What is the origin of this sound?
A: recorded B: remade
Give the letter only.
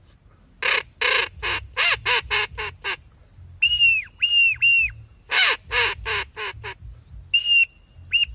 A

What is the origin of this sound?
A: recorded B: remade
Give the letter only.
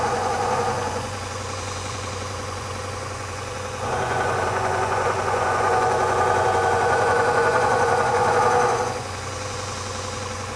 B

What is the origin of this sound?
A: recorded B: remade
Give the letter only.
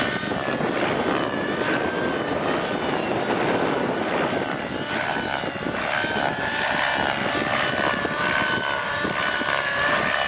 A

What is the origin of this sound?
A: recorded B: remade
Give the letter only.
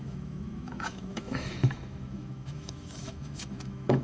B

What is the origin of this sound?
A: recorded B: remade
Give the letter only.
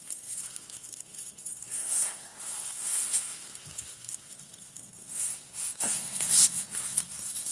B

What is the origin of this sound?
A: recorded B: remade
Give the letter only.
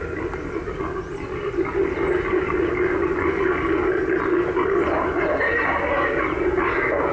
A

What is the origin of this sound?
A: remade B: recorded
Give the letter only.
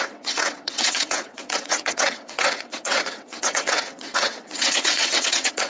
A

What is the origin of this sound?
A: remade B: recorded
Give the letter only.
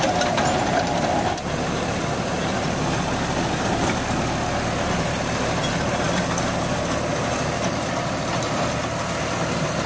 B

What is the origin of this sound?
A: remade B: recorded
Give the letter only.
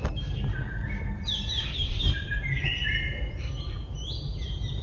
B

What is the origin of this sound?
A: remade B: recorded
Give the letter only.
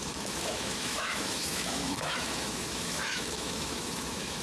A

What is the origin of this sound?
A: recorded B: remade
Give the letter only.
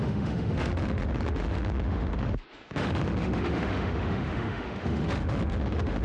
B